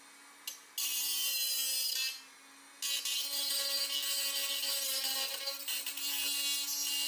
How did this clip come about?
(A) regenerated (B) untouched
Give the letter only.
B